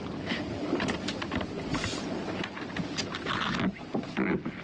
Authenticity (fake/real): real